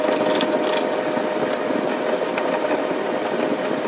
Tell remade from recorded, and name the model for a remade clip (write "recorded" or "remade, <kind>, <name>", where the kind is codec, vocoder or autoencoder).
recorded